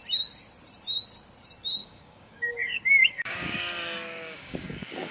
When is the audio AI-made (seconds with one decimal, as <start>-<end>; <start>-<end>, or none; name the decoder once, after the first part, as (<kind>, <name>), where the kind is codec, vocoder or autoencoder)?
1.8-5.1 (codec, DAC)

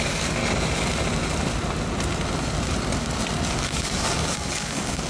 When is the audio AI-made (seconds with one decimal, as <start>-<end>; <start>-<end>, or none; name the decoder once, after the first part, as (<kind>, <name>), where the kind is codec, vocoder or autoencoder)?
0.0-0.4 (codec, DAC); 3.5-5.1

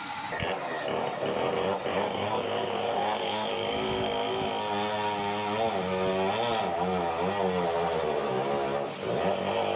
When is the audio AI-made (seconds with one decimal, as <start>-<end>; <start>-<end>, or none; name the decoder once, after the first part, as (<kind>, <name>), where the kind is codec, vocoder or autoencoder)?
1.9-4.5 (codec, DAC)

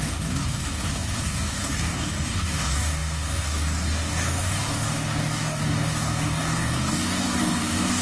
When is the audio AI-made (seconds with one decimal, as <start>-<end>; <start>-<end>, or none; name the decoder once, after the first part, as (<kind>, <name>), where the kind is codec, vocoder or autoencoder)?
0.0-8.0 (codec, DAC)

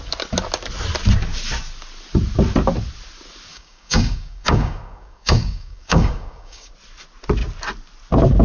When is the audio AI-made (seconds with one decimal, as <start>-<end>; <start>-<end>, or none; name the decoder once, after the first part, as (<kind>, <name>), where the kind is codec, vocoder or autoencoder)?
3.5-6.7 (codec, DAC)

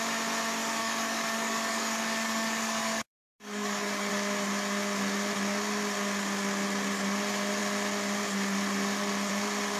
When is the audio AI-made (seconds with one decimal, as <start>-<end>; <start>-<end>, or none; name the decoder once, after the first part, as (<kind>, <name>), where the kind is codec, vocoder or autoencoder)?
0.6-4.1 (codec, DAC)